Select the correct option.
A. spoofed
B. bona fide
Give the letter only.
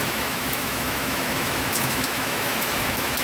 A